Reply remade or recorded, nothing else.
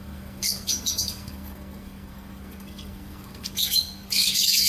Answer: remade